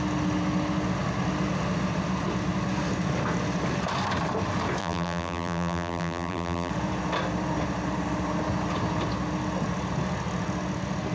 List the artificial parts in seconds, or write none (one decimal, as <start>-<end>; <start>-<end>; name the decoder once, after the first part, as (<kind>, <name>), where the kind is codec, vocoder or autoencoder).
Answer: 4.8-6.7 (vocoder, BigVGAN v2)